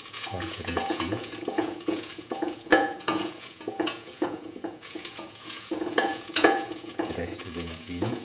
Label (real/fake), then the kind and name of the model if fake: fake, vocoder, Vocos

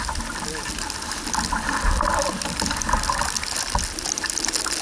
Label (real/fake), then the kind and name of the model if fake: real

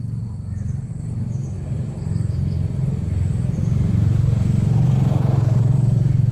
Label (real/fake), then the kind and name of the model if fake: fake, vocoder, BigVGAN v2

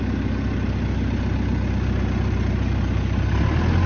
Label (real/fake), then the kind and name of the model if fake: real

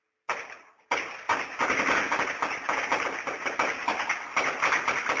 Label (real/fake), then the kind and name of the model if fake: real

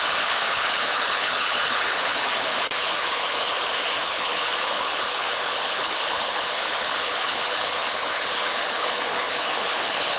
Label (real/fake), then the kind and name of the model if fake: fake, codec, HILCodec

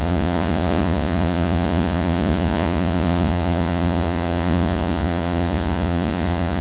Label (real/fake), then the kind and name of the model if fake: fake, vocoder, Vocos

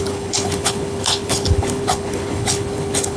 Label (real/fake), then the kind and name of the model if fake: fake, codec, HILCodec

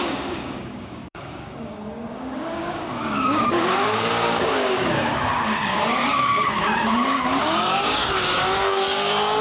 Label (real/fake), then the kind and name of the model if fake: fake, codec, DAC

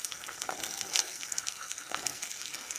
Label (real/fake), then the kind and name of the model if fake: fake, codec, SNAC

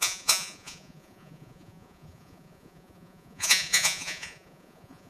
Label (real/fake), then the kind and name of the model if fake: fake, vocoder, Vocos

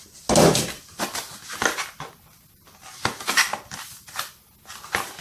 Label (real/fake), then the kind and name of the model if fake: real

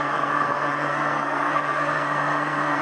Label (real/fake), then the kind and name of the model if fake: fake, codec, SNAC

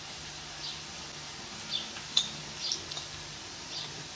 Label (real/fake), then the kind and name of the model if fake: real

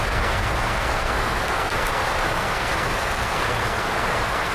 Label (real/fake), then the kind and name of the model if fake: fake, codec, SNAC